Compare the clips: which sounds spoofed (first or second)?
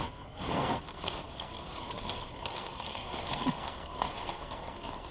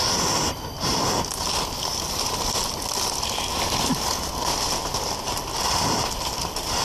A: first